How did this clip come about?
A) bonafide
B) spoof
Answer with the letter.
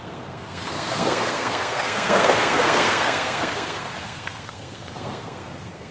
B